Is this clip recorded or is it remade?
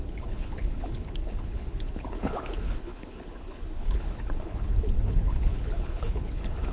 remade